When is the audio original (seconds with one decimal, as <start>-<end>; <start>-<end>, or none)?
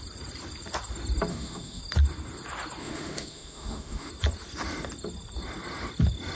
0.0-1.3; 1.8-2.8; 4.1-6.4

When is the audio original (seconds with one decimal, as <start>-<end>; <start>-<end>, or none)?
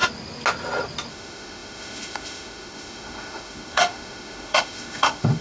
0.0-1.1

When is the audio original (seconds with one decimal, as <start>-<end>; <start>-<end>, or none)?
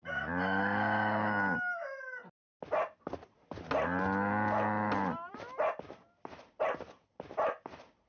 0.0-8.1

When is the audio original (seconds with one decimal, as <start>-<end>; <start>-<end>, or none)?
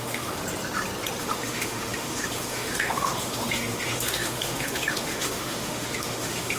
0.4-1.2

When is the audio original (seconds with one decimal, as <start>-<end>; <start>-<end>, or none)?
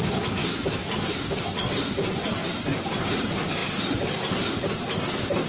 0.0-0.4; 0.9-5.5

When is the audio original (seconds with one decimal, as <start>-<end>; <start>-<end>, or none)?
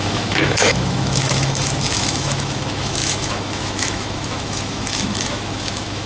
none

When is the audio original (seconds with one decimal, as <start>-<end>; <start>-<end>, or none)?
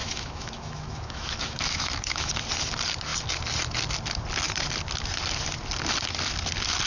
2.3-6.9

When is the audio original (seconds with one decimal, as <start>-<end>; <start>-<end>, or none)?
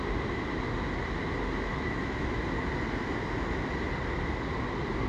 0.0-1.7; 2.4-5.1